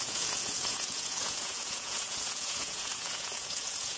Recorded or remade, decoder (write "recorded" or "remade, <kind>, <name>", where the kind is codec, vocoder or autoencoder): remade, vocoder, Vocos